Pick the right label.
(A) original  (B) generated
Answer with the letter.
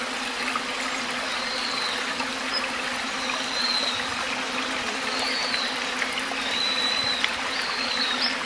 B